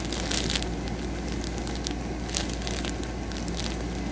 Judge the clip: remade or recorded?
recorded